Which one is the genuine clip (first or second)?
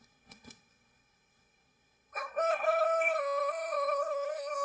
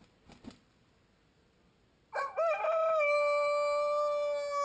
second